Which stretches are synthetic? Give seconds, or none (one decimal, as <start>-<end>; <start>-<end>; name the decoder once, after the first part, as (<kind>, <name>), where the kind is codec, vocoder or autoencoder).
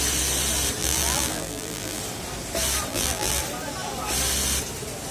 0.8-2.0 (vocoder, BigVGAN v2); 2.9-3.4